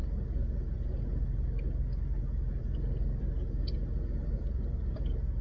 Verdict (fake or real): real